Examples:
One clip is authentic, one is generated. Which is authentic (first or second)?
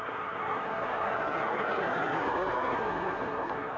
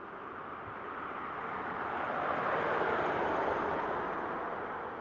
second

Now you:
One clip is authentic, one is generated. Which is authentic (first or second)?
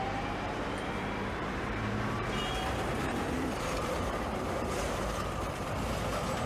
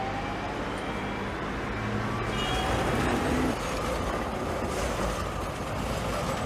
second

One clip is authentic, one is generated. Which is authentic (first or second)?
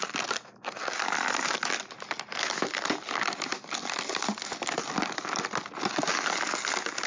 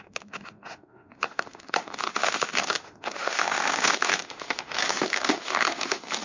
first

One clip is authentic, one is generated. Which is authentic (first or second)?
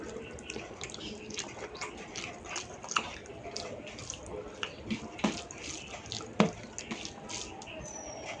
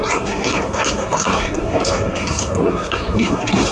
first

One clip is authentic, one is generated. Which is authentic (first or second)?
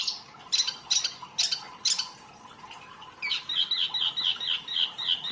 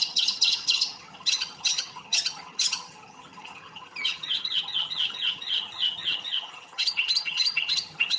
first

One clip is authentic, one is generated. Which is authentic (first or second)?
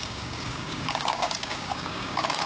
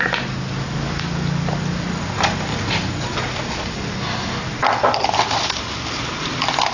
second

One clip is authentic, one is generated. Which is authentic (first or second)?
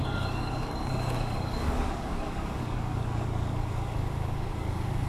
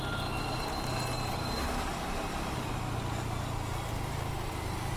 second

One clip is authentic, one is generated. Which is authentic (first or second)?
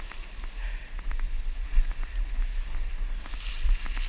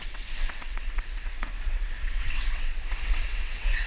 first